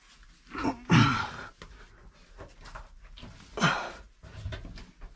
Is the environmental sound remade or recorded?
recorded